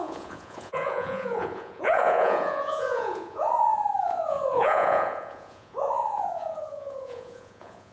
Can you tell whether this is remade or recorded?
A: remade